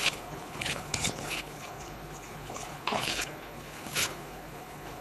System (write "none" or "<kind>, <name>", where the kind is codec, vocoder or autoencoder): codec, HILCodec